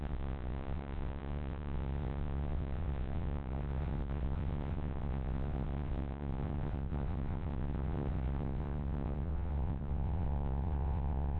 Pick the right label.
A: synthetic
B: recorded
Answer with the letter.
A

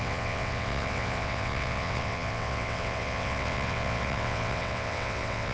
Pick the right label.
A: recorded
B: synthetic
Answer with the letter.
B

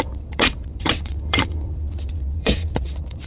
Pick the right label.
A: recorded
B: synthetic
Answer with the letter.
B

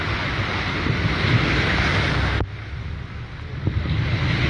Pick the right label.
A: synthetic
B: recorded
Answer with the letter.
B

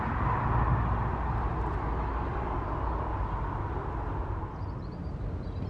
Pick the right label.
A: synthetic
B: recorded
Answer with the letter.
B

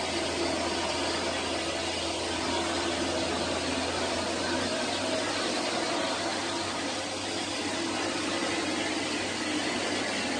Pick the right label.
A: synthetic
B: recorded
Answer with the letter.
B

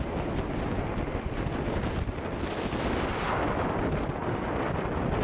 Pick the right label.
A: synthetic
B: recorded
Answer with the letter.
B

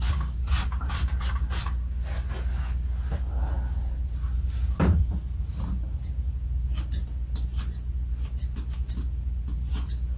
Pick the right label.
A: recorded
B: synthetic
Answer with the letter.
A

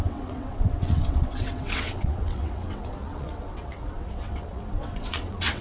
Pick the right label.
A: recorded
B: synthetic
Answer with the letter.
B